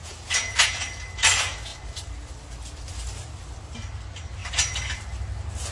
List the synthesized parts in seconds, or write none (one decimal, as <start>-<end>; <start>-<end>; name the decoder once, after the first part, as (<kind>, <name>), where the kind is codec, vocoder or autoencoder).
0.0-0.8 (vocoder, Vocos)